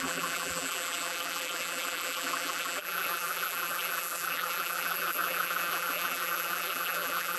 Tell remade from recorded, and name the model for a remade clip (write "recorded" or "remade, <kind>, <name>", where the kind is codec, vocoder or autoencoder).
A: remade, vocoder, BigVGAN v2